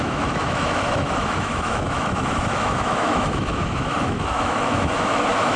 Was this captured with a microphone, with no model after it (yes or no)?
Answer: no